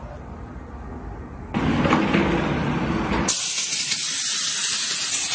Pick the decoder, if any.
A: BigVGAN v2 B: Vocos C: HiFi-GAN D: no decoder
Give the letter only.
D